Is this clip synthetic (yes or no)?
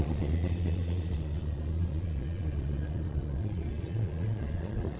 yes